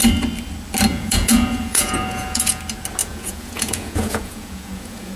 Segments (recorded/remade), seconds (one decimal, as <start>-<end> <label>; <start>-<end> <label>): 0.0-0.9 recorded; 0.9-2.6 remade; 2.6-3.0 recorded; 3.0-5.2 remade